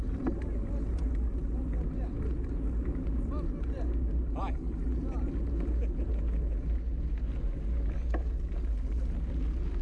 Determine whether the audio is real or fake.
real